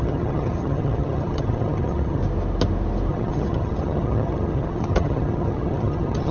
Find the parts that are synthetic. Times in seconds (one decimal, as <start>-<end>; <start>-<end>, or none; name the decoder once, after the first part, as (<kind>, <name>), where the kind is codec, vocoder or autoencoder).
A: 0.0-2.2 (vocoder, HiFi-GAN); 3.1-6.3